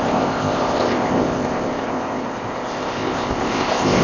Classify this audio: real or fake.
fake